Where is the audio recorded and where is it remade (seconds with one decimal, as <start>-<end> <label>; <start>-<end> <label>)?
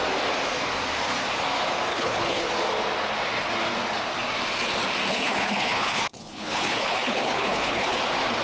0.0-1.9 recorded; 1.9-2.5 remade; 2.5-5.1 recorded; 5.1-8.0 remade; 8.0-8.4 recorded